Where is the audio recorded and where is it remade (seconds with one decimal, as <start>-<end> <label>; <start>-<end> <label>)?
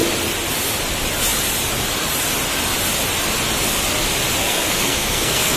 0.0-4.4 recorded; 4.4-5.6 remade